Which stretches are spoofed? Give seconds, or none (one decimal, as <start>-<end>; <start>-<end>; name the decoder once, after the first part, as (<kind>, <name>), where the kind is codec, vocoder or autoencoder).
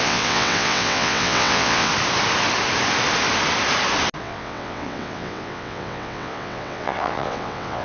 0.0-1.9 (vocoder, WaveNeXt); 4.2-7.8